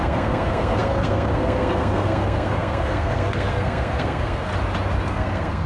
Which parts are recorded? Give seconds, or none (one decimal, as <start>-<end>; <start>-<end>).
4.5-5.1